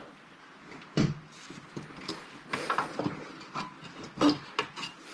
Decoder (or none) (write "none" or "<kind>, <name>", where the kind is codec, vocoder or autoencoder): none